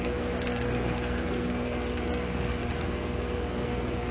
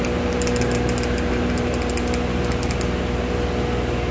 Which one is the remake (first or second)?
first